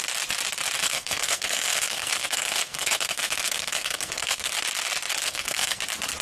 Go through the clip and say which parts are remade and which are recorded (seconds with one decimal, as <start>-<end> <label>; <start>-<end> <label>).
0.0-0.8 recorded; 0.8-4.5 remade; 4.5-5.2 recorded; 5.2-5.8 remade; 5.8-6.2 recorded